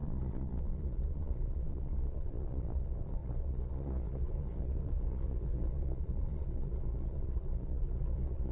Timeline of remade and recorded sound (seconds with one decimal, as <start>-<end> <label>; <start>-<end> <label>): 0.0-8.5 remade